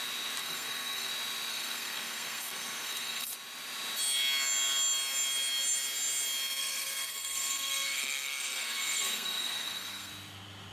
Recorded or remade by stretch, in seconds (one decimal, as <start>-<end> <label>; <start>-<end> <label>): 0.0-0.4 recorded; 0.4-1.1 remade; 1.1-1.5 recorded; 1.5-3.3 remade; 3.3-6.6 recorded; 6.6-10.1 remade; 10.1-10.7 recorded